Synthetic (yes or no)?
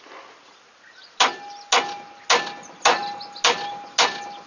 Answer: no